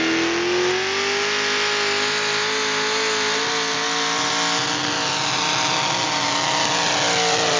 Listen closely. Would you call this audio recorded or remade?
recorded